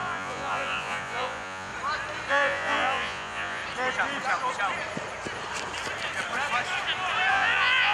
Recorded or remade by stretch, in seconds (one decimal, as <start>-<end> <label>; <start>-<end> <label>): 0.0-1.7 remade; 1.7-2.3 recorded; 2.3-3.6 remade; 3.6-7.3 recorded; 7.3-7.9 remade